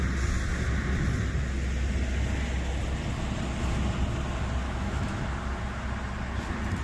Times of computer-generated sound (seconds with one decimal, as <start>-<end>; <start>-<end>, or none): 4.6-5.2